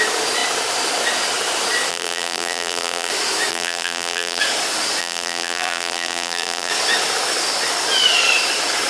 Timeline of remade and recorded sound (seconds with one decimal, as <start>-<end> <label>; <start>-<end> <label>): 0.0-1.9 recorded; 1.9-3.1 remade; 3.1-3.5 recorded; 3.5-4.4 remade; 4.4-5.0 recorded; 5.0-6.7 remade; 6.7-8.9 recorded